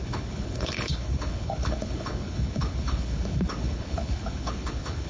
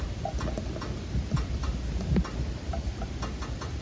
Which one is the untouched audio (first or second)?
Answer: second